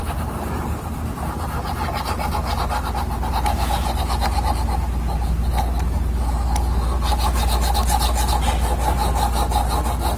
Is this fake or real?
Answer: real